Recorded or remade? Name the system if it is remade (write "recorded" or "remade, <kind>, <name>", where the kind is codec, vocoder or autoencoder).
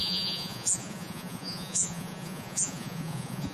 remade, vocoder, Vocos